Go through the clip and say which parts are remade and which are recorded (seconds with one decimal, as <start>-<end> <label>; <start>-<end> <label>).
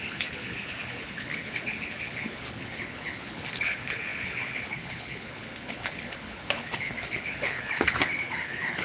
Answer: 0.0-8.8 remade